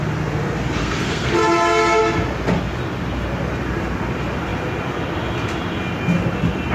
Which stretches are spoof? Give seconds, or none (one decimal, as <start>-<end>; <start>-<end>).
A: 0.8-1.3